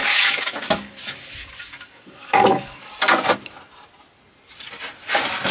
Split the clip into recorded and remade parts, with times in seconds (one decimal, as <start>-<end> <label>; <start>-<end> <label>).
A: 0.0-2.9 remade; 2.9-5.5 recorded